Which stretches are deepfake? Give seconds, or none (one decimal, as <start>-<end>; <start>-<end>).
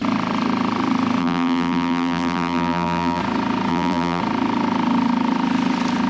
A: 1.2-3.2; 3.7-4.2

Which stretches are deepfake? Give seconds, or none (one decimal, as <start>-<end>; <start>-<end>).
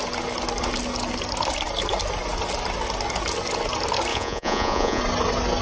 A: 4.1-5.0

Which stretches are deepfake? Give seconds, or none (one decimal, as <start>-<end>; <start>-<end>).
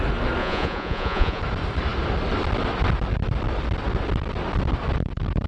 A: 0.4-1.4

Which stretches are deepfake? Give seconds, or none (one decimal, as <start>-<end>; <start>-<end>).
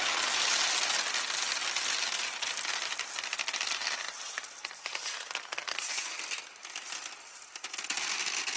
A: none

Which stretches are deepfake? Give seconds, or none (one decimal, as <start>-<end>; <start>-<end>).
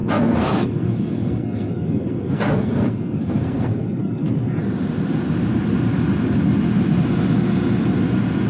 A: 0.0-4.6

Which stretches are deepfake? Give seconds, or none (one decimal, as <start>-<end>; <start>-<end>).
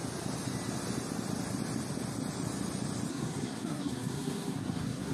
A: 3.1-5.1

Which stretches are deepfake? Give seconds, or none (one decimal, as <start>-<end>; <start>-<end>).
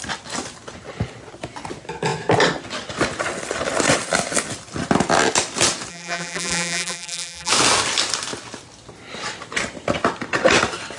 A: 5.9-7.5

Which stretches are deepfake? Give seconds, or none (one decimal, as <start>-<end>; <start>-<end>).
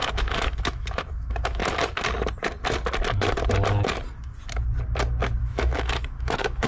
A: 0.0-1.6; 5.4-6.7